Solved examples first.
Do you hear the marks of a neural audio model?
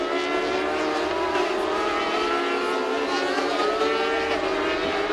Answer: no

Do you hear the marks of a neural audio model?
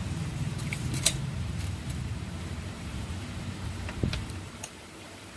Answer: yes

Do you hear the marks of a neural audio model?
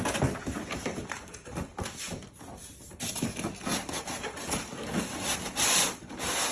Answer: no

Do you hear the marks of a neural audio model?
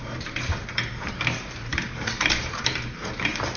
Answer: yes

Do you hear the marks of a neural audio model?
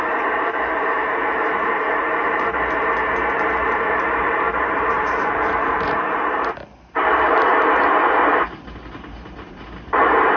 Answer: yes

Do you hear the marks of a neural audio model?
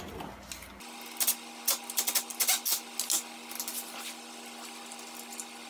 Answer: no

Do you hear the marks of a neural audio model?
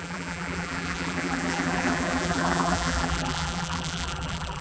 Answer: yes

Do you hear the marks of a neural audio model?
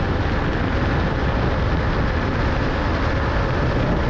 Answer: no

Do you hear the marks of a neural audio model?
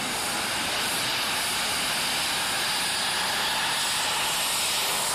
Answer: no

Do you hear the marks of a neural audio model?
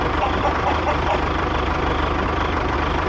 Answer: yes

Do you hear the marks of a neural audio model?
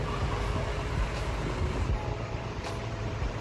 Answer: yes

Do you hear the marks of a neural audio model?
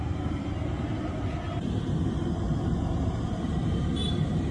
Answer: yes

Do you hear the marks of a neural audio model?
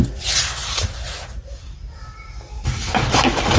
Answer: no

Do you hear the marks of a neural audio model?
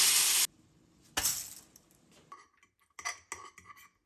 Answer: no